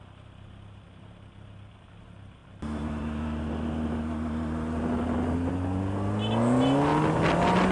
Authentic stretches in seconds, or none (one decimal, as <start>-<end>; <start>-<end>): 0.0-7.7